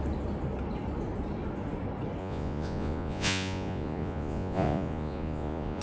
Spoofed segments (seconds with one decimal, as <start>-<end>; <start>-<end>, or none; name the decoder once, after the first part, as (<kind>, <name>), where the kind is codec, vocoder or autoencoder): 2.2-5.8 (vocoder, Vocos)